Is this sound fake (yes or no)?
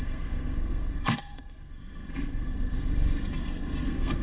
yes